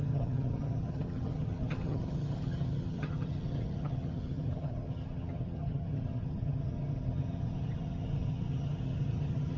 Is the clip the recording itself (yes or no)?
no